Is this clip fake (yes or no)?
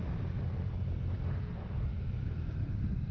no